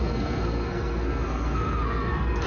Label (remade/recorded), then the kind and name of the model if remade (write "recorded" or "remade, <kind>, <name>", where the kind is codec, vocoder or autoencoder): remade, codec, SNAC